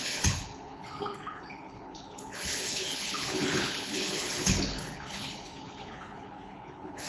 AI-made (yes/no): yes